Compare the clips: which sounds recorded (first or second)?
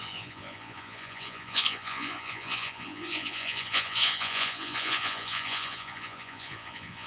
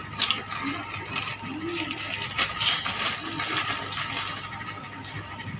second